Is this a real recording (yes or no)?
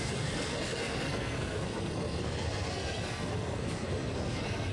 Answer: no